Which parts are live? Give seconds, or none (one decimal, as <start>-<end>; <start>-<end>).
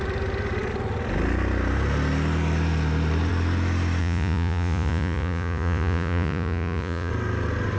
0.0-4.0; 7.1-7.8